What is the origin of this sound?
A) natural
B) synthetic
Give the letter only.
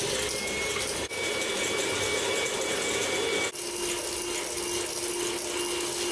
A